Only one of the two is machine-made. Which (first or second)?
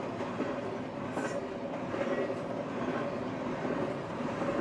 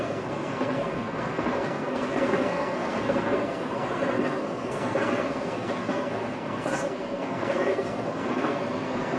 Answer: second